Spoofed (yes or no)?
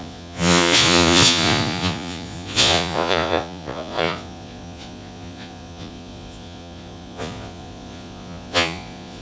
yes